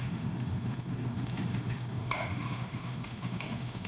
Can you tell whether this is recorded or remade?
remade